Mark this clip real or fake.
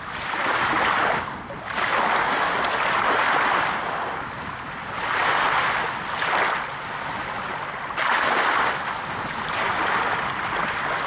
real